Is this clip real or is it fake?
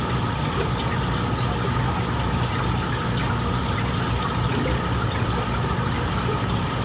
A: real